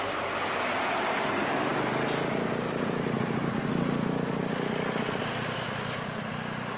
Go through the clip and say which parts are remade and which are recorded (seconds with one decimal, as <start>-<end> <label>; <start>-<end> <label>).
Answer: 0.0-6.8 recorded